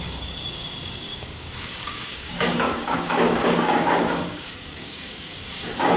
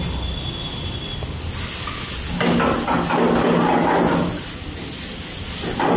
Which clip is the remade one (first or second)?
first